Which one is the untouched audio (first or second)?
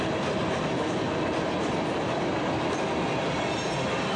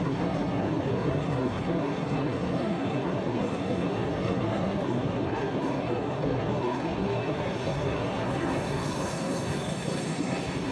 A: first